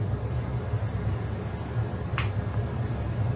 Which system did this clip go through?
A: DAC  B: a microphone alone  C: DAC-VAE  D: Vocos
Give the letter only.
B